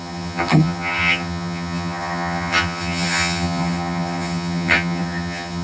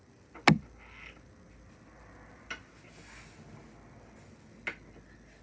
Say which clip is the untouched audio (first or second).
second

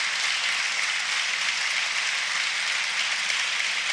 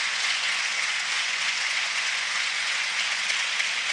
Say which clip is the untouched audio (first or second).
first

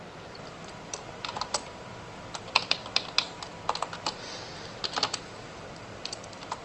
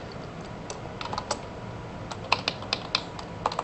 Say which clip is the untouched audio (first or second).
second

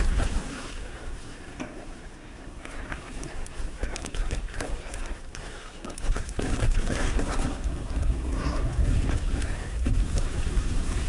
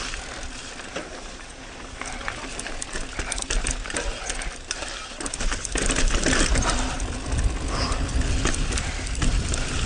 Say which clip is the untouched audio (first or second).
second